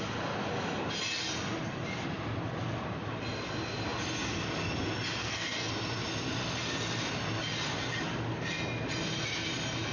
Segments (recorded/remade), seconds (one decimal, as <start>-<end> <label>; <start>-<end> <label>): 0.0-5.2 recorded; 5.2-5.7 remade; 5.7-9.9 recorded